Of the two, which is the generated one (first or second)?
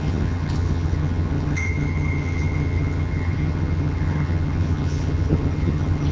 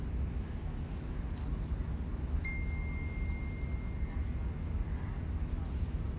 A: first